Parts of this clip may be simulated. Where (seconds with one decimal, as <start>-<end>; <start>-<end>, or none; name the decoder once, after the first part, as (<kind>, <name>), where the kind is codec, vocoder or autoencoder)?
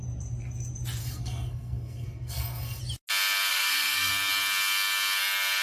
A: 1.0-2.8 (codec, SNAC); 3.5-4.1